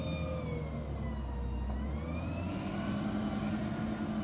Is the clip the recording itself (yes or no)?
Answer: yes